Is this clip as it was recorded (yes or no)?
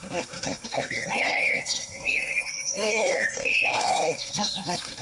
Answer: no